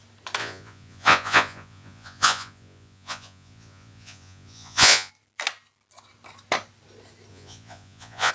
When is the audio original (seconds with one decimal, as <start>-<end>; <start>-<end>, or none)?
0.0-0.4; 5.1-7.3